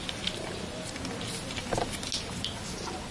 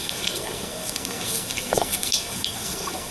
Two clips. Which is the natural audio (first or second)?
first